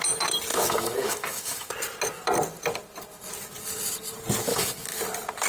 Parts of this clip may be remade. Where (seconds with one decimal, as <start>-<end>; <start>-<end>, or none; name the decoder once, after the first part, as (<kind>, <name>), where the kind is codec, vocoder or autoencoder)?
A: 0.5-1.7 (autoencoder, DAC-VAE); 4.5-5.0